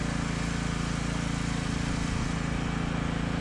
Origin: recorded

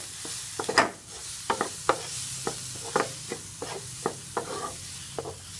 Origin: recorded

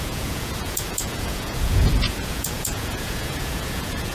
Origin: remade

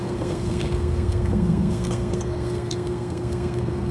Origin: remade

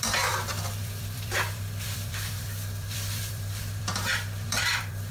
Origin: remade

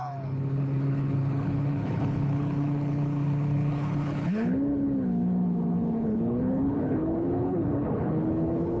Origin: remade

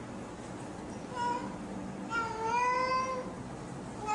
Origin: recorded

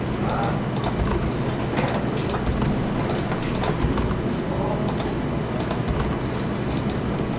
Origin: recorded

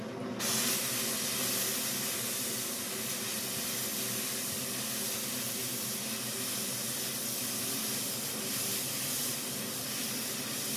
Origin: recorded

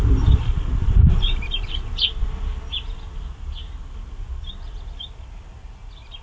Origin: recorded